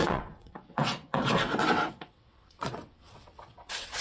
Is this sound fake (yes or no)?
yes